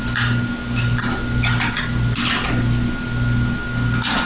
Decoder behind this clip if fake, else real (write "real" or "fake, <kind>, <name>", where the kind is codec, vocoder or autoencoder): real